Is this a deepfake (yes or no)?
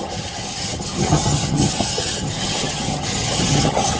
yes